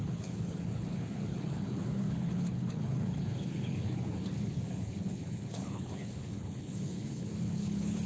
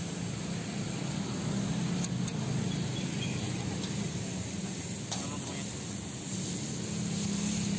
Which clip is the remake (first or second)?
first